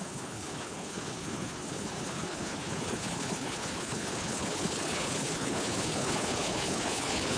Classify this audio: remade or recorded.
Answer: remade